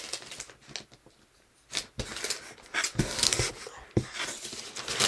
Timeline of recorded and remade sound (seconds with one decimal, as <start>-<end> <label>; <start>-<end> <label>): 0.0-5.1 recorded